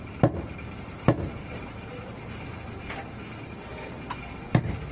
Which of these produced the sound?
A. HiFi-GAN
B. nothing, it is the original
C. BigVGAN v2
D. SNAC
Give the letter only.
B